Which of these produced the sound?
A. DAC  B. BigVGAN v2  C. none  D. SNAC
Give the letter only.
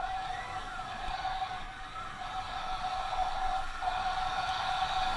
A